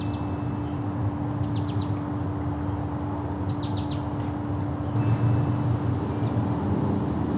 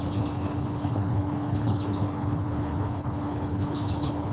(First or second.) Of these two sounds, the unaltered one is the first